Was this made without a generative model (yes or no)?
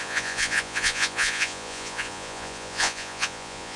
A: no